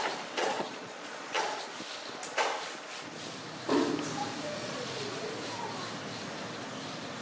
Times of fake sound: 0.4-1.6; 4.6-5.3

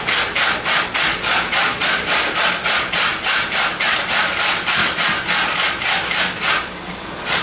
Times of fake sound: 1.1-1.9

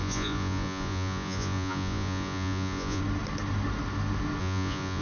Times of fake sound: 0.0-3.0; 4.4-5.0

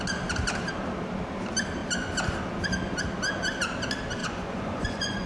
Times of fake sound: 4.2-5.3

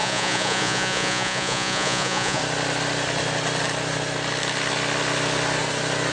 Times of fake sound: 0.0-2.4